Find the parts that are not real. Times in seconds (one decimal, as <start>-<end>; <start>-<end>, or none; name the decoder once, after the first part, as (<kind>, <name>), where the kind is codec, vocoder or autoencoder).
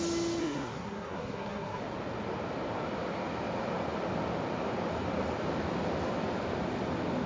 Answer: 0.4-1.8 (codec, SNAC)